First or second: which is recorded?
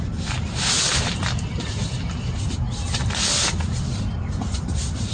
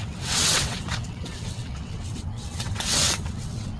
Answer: first